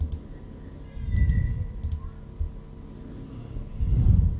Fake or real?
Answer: real